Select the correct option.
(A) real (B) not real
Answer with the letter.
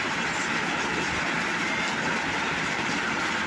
A